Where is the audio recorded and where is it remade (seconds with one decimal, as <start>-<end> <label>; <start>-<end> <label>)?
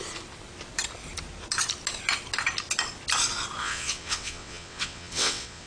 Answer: 0.0-3.6 recorded; 3.6-5.7 remade